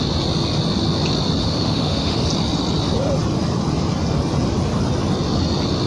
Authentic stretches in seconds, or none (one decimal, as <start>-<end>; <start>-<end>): 0.0-1.4; 2.3-5.9

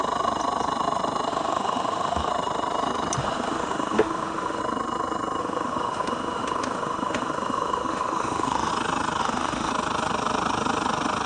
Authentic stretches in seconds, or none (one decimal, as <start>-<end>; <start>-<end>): 0.0-1.3; 2.3-3.2; 4.6-5.4; 8.7-9.2; 9.7-11.3

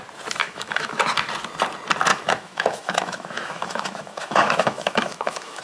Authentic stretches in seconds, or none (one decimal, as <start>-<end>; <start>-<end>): 0.0-0.4; 1.0-2.1

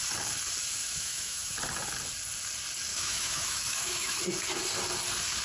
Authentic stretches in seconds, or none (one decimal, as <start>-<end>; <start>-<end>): 0.0-0.8; 1.5-2.9; 4.2-5.4

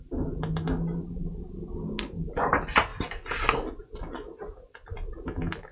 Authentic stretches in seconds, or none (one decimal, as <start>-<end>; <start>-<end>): 0.0-5.7

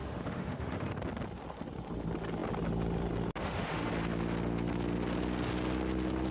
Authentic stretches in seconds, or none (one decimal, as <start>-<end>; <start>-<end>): 0.9-3.4; 3.9-6.3